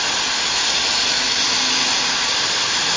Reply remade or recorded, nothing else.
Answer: recorded